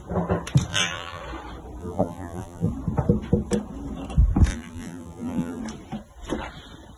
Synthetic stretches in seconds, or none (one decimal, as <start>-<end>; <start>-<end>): 0.7-1.2; 1.8-2.7; 4.5-5.6